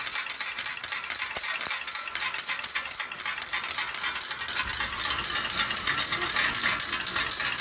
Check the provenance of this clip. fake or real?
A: real